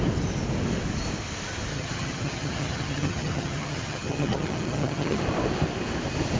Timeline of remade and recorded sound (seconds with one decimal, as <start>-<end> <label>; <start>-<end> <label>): 0.0-1.7 recorded; 1.7-5.2 remade; 5.2-6.4 recorded